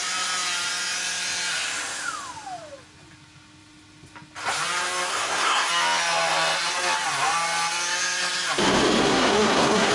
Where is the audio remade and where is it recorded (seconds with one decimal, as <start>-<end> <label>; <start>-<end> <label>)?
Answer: 0.0-5.1 recorded; 5.1-5.7 remade; 5.7-9.0 recorded; 9.0-9.9 remade

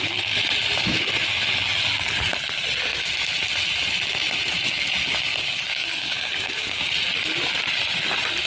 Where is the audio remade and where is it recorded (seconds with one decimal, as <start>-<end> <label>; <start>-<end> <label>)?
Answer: 0.0-5.4 recorded; 5.4-6.8 remade; 6.8-8.5 recorded